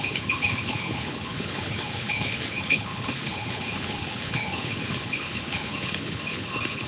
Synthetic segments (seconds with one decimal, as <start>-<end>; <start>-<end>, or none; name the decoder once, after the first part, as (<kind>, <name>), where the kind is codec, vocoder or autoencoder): 0.0-6.9 (codec, HILCodec)